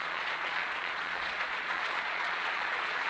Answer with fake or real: fake